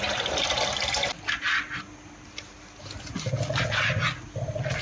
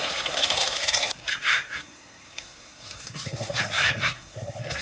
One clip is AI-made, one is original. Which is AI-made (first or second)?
second